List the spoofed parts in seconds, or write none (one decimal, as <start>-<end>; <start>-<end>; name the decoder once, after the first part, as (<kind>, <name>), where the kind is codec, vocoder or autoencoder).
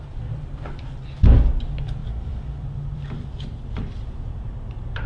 2.0-5.1 (vocoder, BigVGAN v2)